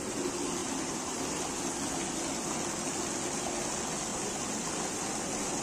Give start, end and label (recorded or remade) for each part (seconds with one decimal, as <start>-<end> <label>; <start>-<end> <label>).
0.0-0.6 recorded; 0.6-1.6 remade; 1.6-4.1 recorded; 4.1-4.7 remade; 4.7-5.6 recorded